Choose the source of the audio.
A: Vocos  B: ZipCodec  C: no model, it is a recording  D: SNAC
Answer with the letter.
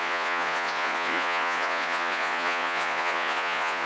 A